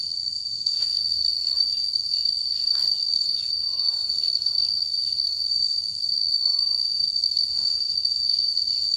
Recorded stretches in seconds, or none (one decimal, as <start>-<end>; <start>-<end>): none